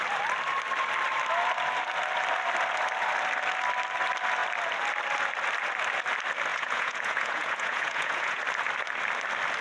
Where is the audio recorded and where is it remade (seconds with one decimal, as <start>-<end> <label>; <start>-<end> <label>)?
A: 0.0-6.5 recorded; 6.5-8.4 remade; 8.4-9.6 recorded